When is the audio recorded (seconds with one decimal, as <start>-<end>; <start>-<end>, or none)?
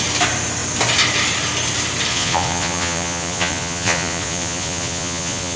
0.0-2.1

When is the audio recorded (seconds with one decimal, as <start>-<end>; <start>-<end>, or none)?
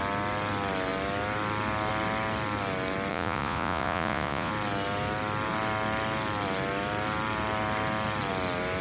0.0-3.1; 4.5-8.8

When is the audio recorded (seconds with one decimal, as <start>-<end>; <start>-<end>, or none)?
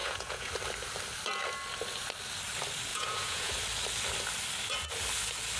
0.5-2.9; 3.5-5.6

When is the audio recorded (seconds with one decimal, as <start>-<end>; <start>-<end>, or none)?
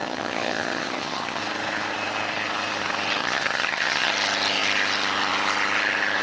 1.4-3.2; 4.1-6.2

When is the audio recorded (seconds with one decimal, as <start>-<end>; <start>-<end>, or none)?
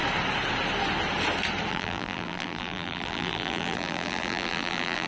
0.0-1.7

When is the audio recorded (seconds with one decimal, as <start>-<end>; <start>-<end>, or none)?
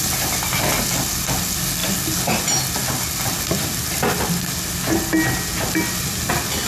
0.0-6.7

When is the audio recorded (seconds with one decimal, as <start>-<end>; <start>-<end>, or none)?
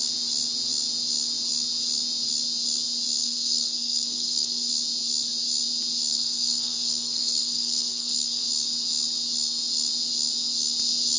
0.0-3.2; 4.7-6.1; 8.4-11.2